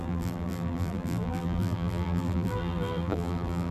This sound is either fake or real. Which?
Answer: fake